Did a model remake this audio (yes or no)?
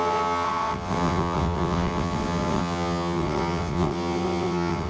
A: yes